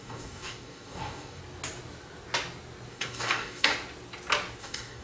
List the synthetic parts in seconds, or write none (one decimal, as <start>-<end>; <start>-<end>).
0.0-1.4; 2.9-3.7; 4.6-5.0